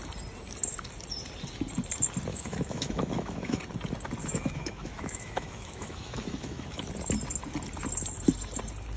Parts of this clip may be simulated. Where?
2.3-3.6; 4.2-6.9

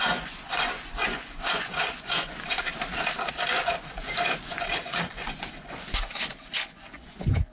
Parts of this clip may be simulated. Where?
0.0-2.7; 3.3-7.5